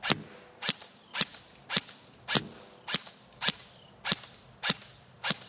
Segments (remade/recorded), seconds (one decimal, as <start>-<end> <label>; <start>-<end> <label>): 0.0-5.5 recorded